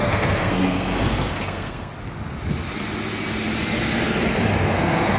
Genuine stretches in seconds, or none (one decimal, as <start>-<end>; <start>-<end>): 1.9-4.6